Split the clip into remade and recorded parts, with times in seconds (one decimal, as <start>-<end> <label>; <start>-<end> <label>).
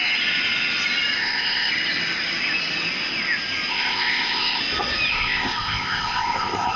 0.0-1.2 recorded; 1.2-1.7 remade; 1.7-3.7 recorded; 3.7-4.6 remade; 4.6-5.1 recorded; 5.1-6.8 remade